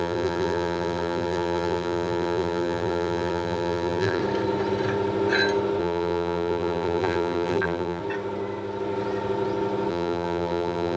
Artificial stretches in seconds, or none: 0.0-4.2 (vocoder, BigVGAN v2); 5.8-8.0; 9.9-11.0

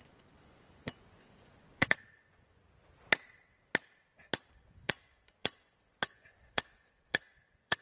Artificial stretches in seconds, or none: 0.0-2.6 (vocoder, Vocos); 4.5-7.8